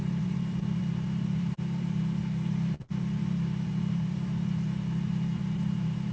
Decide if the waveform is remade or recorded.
remade